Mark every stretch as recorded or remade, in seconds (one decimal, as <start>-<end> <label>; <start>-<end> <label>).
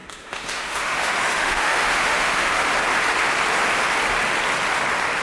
0.0-2.7 remade; 2.7-5.2 recorded